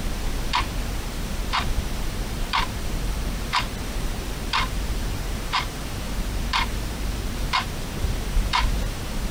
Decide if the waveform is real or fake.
fake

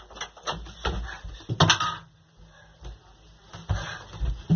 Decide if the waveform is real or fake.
real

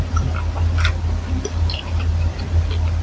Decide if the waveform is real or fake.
real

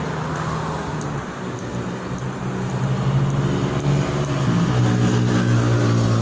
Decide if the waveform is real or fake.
real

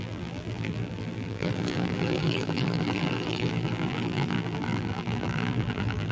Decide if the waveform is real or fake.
fake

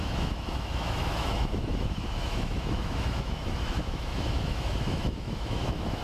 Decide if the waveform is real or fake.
fake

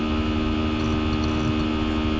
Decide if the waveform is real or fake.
real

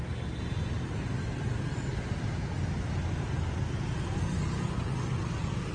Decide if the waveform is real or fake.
real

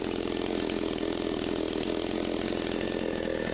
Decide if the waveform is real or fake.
real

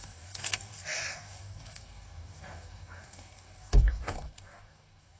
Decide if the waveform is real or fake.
fake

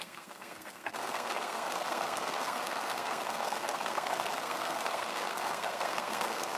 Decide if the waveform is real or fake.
fake